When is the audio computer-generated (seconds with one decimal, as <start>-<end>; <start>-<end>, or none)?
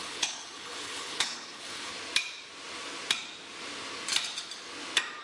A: 0.0-1.9